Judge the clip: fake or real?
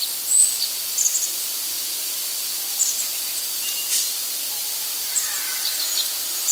real